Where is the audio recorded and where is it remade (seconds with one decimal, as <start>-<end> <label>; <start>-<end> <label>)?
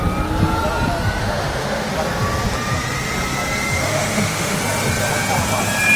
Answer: 0.0-1.2 recorded; 1.2-1.9 remade; 1.9-3.8 recorded; 3.8-4.6 remade; 4.6-6.0 recorded